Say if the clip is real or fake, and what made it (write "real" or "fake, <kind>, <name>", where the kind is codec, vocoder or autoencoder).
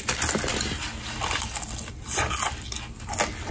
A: real